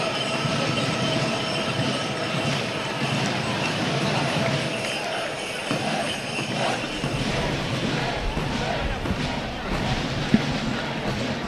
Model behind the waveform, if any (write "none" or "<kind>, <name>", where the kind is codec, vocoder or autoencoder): vocoder, BigVGAN v2